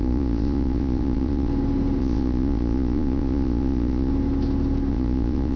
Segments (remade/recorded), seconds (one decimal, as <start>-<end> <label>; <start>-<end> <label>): 0.0-1.5 remade; 1.5-2.0 recorded; 2.0-4.1 remade; 4.1-4.9 recorded; 4.9-5.6 remade